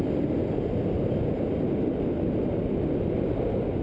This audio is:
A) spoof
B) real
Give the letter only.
B